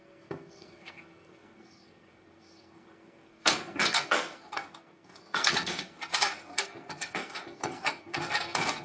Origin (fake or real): fake